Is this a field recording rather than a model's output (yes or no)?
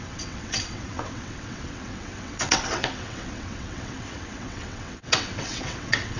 no